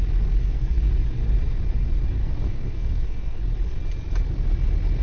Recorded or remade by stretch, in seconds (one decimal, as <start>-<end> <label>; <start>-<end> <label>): 0.0-0.4 recorded; 0.4-0.9 remade; 0.9-2.2 recorded; 2.2-3.4 remade; 3.4-5.0 recorded